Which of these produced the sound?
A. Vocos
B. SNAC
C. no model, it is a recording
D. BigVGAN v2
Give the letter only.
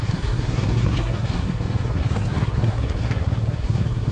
B